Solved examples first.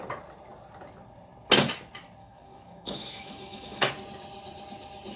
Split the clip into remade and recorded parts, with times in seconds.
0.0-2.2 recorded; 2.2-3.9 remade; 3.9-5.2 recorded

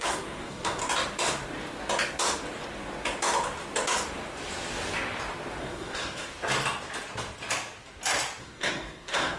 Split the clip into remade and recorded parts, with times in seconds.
0.0-0.8 remade; 0.8-5.6 recorded; 5.6-6.3 remade; 6.3-8.4 recorded; 8.4-9.4 remade

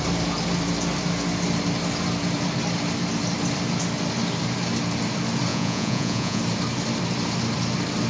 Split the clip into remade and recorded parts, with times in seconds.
0.0-5.5 recorded; 5.5-6.4 remade; 6.4-8.1 recorded

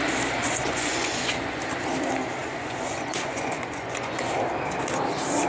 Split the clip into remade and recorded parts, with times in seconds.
0.0-0.4 recorded; 0.4-1.6 remade; 1.6-2.4 recorded; 2.4-4.3 remade; 4.3-5.5 recorded

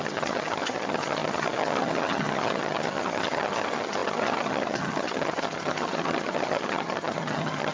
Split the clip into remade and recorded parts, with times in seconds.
0.0-7.7 remade